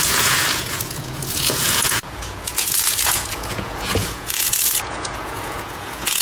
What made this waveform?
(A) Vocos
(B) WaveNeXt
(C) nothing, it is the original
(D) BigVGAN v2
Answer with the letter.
A